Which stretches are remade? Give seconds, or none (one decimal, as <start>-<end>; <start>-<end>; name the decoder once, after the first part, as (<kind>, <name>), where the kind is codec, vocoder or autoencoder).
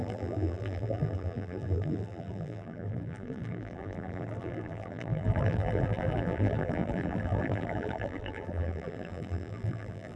0.0-10.2 (vocoder, BigVGAN v2)